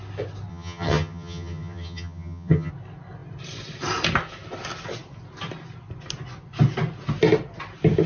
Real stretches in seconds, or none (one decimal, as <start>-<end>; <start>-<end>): 0.0-0.5; 2.7-8.1